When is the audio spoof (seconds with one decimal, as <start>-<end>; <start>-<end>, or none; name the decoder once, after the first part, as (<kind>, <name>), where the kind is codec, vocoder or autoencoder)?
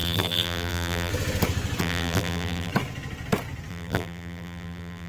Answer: 0.0-1.1 (vocoder, BigVGAN v2); 1.8-2.7; 3.7-5.1